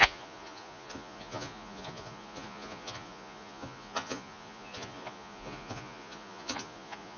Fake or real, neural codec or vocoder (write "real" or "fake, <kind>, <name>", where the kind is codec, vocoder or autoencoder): fake, vocoder, Vocos